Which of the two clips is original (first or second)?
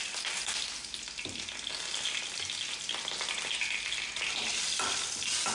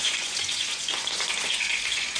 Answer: first